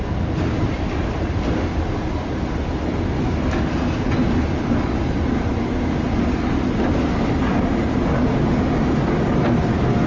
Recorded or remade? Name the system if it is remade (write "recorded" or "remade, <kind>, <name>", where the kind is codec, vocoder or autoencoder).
recorded